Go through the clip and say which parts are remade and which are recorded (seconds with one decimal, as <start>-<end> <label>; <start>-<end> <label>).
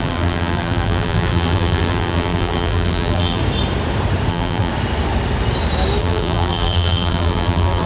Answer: 0.0-3.4 remade; 3.4-4.3 recorded; 4.3-4.7 remade; 4.7-6.0 recorded; 6.0-7.9 remade